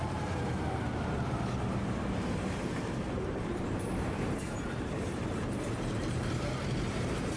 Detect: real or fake fake